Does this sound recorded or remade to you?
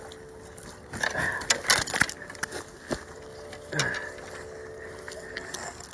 recorded